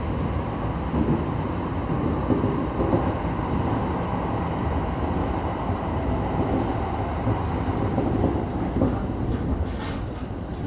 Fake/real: real